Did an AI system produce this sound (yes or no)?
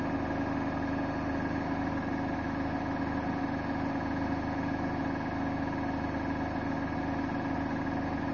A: no